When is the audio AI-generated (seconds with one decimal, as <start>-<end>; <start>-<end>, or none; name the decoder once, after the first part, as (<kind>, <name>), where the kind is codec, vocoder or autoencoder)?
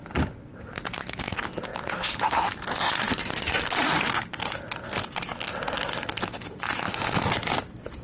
1.7-4.6 (vocoder, BigVGAN v2)